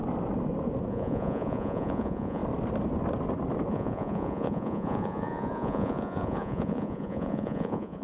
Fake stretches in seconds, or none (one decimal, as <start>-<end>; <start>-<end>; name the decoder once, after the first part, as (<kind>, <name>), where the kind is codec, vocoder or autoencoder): 0.9-2.4 (vocoder, Vocos); 3.7-8.0